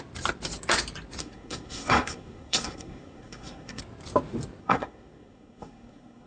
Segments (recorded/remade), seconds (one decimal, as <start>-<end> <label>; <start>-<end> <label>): 0.0-1.2 recorded; 1.2-3.8 remade; 3.8-4.6 recorded; 4.6-6.3 remade